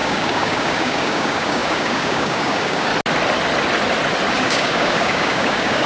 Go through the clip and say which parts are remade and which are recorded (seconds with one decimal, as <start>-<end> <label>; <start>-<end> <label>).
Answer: 0.0-2.9 remade; 2.9-4.4 recorded; 4.4-5.9 remade